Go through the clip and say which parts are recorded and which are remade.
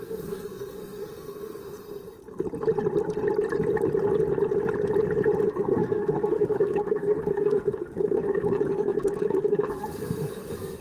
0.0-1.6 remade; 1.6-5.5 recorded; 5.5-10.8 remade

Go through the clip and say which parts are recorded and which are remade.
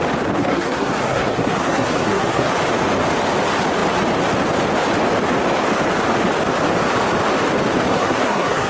0.0-0.4 recorded; 0.4-2.5 remade; 2.5-7.9 recorded; 7.9-8.7 remade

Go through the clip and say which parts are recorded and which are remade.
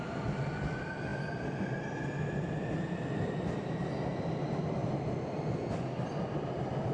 0.0-6.9 recorded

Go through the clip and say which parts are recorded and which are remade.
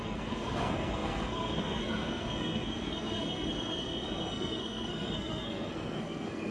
0.0-6.5 remade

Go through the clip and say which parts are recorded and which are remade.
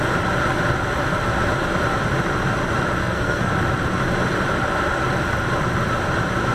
0.0-3.0 recorded; 3.0-3.5 remade; 3.5-6.5 recorded